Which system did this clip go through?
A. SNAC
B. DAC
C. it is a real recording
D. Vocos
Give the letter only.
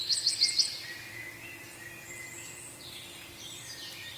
C